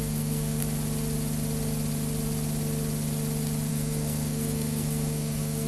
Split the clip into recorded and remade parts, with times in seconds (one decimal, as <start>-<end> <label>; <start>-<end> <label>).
0.0-0.6 remade; 0.6-3.7 recorded; 3.7-5.7 remade